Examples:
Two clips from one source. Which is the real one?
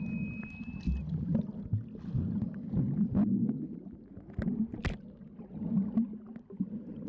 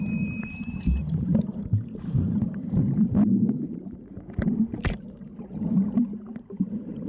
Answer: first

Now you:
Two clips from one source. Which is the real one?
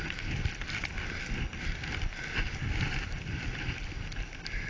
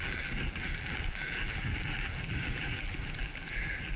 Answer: first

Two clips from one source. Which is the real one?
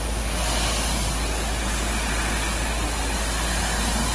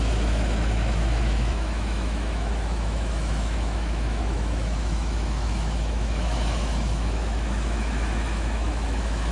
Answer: first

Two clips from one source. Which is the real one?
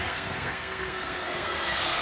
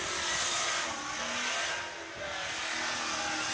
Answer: second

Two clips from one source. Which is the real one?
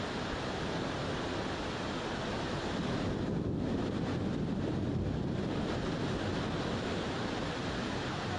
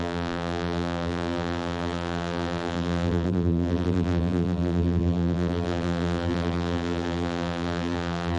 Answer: first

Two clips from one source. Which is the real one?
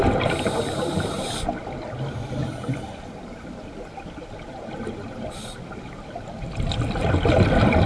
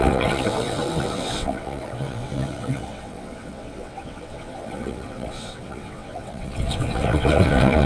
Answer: first